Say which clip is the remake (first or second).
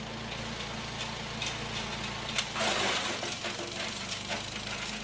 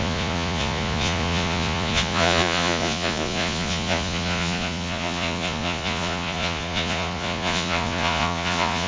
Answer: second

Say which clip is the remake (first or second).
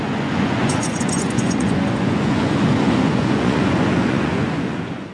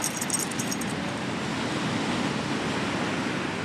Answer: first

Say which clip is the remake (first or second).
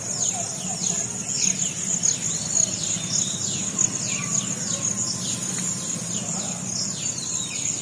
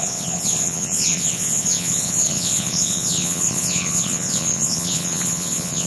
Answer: second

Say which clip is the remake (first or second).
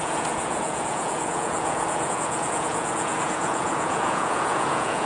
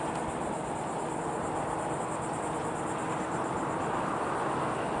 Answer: first